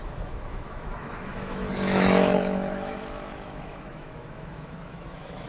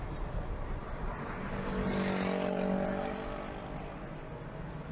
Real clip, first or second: second